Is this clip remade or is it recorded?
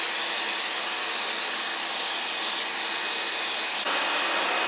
recorded